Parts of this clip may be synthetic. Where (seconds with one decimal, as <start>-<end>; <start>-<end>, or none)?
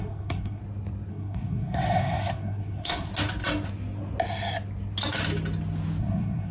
0.0-0.6; 1.1-3.1; 6.0-6.5